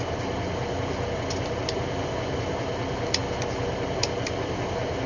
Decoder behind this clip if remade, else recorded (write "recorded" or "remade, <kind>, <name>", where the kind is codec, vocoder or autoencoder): recorded